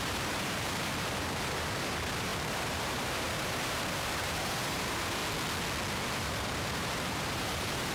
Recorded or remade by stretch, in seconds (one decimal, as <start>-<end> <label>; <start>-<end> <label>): 0.0-5.2 remade; 5.2-5.9 recorded; 5.9-7.9 remade